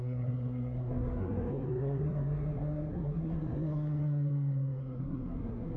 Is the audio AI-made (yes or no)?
yes